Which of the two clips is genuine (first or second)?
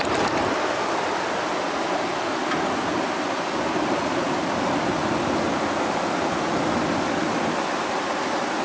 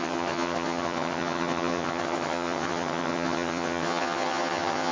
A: first